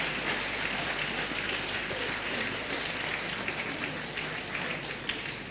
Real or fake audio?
real